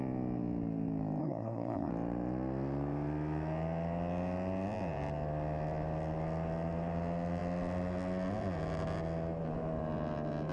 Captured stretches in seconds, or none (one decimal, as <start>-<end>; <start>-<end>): 0.0-1.2; 1.9-10.5